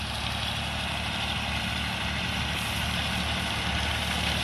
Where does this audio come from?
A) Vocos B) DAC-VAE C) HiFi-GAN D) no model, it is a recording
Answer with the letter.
D